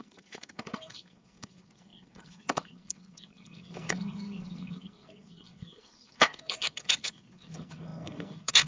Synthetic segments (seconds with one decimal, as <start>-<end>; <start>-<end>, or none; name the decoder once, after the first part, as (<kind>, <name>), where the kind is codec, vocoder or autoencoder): 0.0-8.7 (codec, SNAC)